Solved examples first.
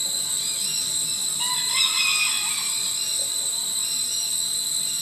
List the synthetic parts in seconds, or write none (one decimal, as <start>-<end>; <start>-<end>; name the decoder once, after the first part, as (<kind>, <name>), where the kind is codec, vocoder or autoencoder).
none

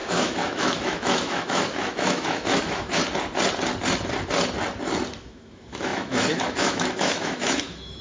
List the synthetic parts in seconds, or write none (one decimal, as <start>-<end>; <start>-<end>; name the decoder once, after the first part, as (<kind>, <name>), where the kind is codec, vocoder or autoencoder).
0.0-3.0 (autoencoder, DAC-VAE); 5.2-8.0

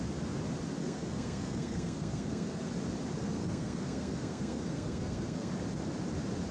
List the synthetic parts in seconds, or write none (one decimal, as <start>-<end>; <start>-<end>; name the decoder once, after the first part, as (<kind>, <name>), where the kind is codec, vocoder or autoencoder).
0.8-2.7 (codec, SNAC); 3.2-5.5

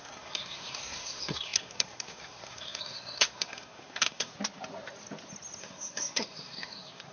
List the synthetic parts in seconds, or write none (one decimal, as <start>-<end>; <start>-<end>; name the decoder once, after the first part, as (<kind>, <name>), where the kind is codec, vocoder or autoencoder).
0.0-4.3 (codec, SNAC); 5.6-7.1

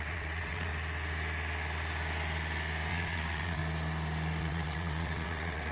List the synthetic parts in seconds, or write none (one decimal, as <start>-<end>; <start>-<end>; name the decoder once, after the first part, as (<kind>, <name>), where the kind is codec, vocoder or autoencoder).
0.0-0.7 (vocoder, WaveNeXt); 2.9-3.6; 4.4-5.7

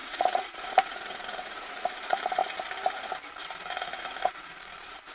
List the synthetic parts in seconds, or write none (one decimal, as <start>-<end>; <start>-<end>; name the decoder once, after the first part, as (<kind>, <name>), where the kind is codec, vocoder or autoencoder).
0.0-2.4 (vocoder, Vocos); 3.6-5.1

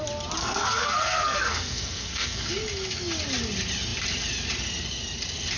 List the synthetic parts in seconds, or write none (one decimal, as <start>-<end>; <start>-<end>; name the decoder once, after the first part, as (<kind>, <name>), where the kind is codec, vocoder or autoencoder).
0.4-2.5 (codec, SNAC)

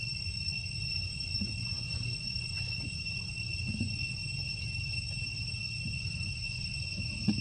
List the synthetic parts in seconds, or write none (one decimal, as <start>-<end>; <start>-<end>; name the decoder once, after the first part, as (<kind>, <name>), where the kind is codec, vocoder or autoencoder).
0.0-4.2 (vocoder, Vocos); 5.8-7.4